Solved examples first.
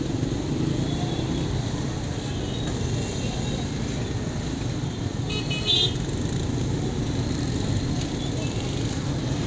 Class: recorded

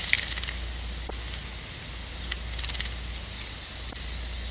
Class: recorded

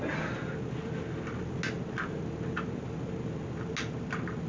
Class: recorded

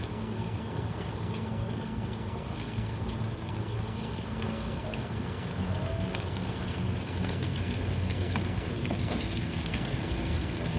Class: remade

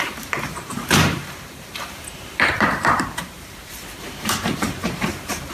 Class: remade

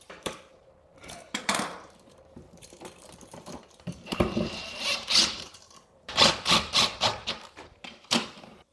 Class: remade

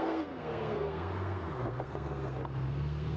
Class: remade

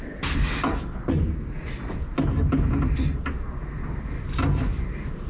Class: recorded